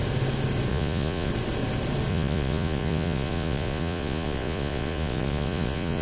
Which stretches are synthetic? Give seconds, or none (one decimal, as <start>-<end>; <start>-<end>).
0.7-1.3; 2.1-6.0